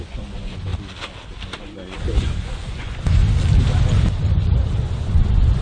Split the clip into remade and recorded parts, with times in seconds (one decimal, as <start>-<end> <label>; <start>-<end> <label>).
0.0-0.7 remade; 0.7-1.6 recorded; 1.6-3.2 remade; 3.2-4.8 recorded; 4.8-5.6 remade